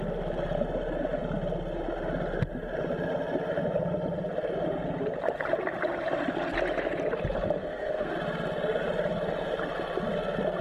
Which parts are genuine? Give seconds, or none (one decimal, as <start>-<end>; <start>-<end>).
0.0-7.6; 8.1-10.6